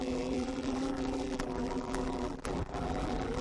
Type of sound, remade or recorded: remade